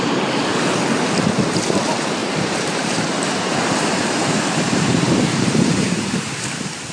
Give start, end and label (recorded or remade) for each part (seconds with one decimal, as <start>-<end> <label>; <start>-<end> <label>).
0.0-2.2 recorded; 2.2-6.3 remade; 6.3-6.9 recorded